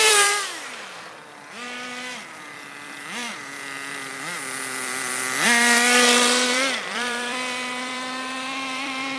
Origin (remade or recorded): remade